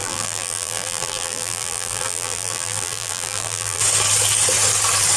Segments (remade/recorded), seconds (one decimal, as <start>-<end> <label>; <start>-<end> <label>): 0.0-3.8 remade; 3.8-5.2 recorded